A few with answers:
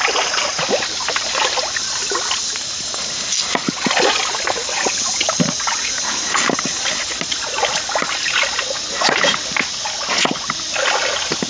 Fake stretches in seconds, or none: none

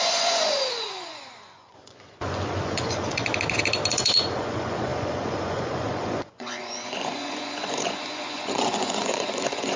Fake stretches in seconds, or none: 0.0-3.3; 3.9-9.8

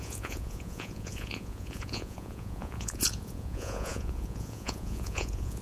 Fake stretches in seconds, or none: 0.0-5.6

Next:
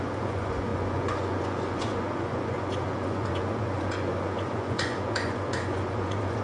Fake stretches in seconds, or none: 0.0-6.4

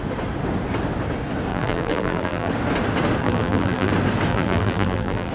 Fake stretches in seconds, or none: 1.5-2.5; 3.2-3.9; 4.3-5.3

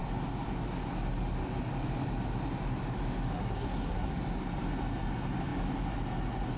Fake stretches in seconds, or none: 3.3-4.1

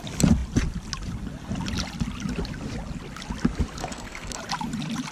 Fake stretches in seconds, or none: 3.8-4.4